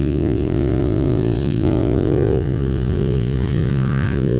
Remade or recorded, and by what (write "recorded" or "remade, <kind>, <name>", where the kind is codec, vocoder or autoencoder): remade, vocoder, Vocos